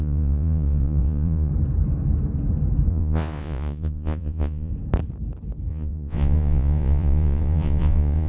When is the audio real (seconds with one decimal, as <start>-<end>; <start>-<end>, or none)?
1.5-2.9; 4.7-5.7